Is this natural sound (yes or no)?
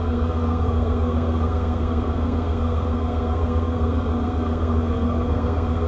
no